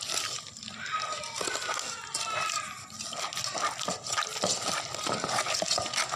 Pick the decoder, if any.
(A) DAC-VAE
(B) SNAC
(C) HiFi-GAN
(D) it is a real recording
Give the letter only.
D